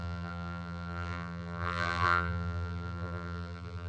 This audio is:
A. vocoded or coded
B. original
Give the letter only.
A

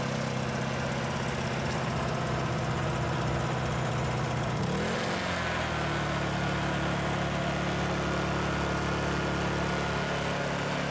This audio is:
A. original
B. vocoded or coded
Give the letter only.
A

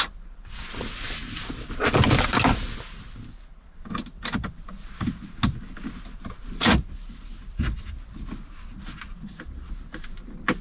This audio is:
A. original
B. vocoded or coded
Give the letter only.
A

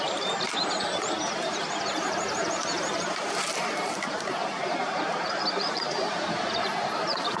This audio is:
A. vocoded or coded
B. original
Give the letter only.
A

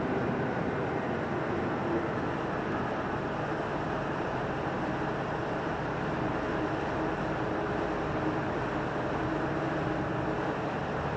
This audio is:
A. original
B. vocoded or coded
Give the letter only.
B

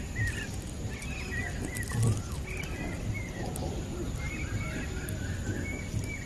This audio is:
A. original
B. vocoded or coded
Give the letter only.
A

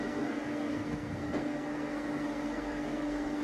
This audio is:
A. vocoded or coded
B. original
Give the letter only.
A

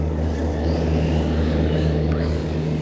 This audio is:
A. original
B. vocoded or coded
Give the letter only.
B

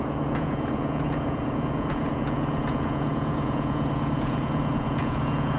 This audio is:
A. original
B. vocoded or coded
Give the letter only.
B